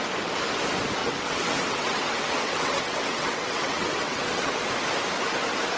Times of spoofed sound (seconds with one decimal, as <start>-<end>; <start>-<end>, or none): 1.0-4.5

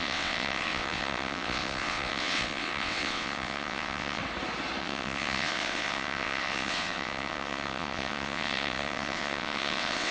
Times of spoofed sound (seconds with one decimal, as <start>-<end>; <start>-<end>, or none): 0.0-4.2; 4.8-10.1